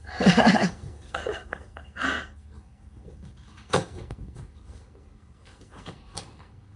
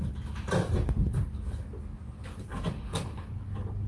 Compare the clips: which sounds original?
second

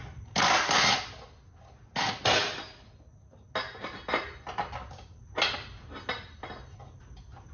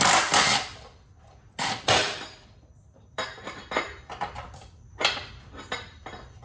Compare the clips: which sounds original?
first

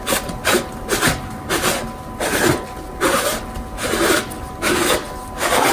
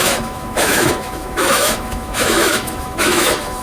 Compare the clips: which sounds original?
first